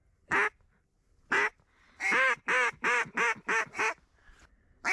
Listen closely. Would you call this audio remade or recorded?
recorded